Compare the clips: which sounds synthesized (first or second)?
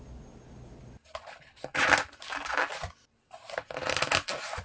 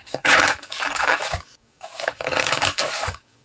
second